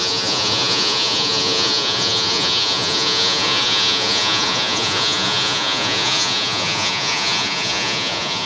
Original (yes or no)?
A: no